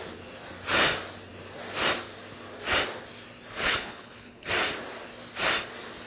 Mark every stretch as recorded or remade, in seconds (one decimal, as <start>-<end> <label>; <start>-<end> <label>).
0.0-3.7 recorded; 3.7-4.5 remade; 4.5-6.1 recorded